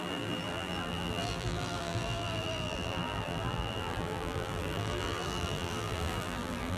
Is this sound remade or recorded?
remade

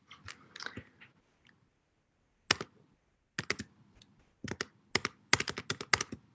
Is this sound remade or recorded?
recorded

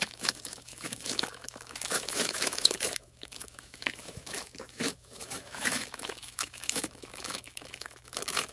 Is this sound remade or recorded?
remade